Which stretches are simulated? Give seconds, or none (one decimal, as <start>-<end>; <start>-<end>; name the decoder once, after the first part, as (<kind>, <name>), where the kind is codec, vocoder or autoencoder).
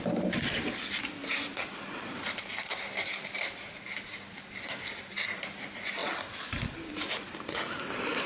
none